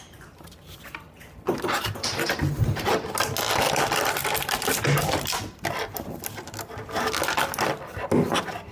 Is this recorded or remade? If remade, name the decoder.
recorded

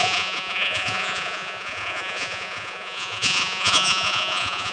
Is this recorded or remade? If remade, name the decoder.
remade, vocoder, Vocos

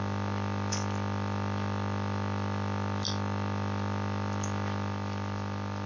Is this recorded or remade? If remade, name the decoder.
recorded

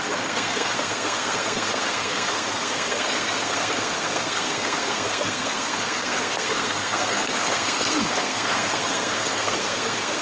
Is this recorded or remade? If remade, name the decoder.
remade, codec, SNAC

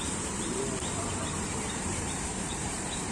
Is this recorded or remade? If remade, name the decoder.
remade, vocoder, BigVGAN v2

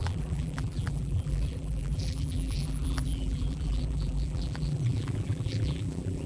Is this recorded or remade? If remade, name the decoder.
remade, vocoder, BigVGAN v2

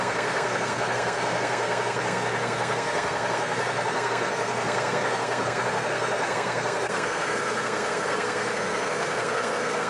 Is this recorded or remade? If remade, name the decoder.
remade, codec, SNAC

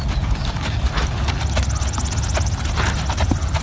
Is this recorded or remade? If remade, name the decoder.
recorded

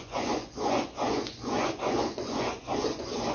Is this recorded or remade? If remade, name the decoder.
remade, vocoder, Vocos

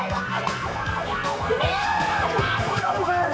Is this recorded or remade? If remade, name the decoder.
remade, codec, SNAC